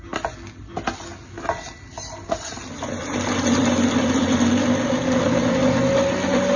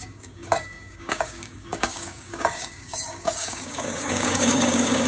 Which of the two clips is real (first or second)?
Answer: first